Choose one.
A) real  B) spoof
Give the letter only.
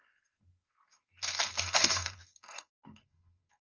B